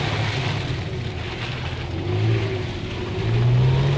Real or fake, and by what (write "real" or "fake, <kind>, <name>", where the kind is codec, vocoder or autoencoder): real